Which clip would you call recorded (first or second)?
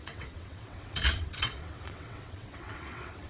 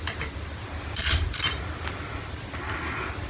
second